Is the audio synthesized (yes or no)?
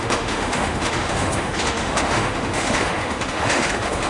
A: yes